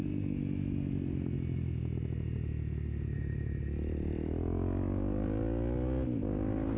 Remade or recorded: recorded